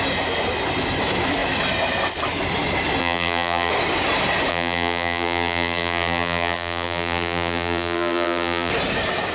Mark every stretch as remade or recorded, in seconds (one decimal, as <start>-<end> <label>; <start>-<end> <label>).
0.0-3.0 recorded; 3.0-3.7 remade; 3.7-4.5 recorded; 4.5-8.7 remade; 8.7-9.3 recorded